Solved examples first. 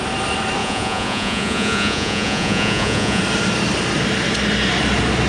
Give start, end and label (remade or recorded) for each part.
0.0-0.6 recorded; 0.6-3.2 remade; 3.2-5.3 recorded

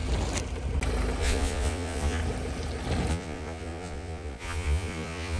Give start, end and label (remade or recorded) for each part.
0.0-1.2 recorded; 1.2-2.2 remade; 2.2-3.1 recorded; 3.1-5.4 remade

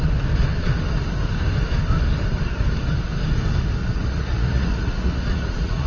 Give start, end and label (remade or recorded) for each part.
0.0-3.8 recorded; 3.8-5.9 remade

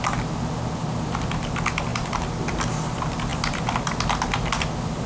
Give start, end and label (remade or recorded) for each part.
0.0-5.1 recorded